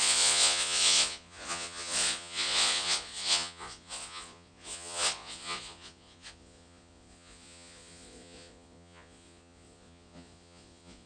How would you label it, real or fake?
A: fake